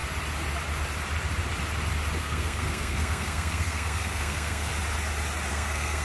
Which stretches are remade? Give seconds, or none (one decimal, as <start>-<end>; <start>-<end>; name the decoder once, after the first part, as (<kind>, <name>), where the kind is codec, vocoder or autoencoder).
2.2-4.7 (codec, SNAC); 5.5-6.0